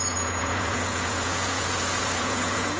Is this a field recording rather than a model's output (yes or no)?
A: no